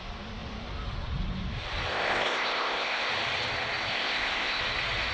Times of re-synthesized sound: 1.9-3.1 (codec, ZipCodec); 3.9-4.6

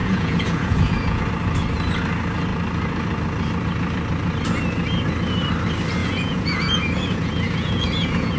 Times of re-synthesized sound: 0.0-1.2 (vocoder, Vocos); 6.0-8.4

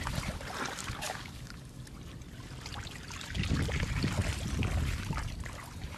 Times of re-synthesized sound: 0.8-1.8 (codec, DAC)

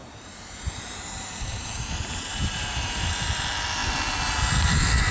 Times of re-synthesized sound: 0.0-3.1 (vocoder, BigVGAN v2)

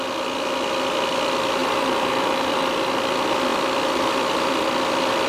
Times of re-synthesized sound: 1.6-2.5 (vocoder, BigVGAN v2); 3.5-5.3

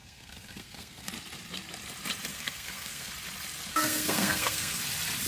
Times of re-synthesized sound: 0.0-1.1 (codec, SNAC); 2.3-3.1; 3.7-4.8

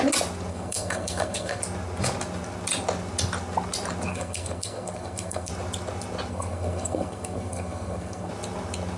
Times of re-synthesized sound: 0.5-1.6 (codec, SNAC); 4.1-5.5; 6.3-8.3